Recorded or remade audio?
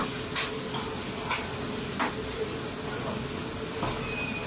recorded